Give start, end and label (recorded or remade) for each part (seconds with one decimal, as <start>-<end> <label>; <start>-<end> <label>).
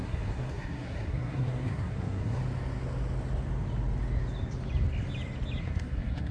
0.0-2.4 remade; 2.4-5.6 recorded; 5.6-6.3 remade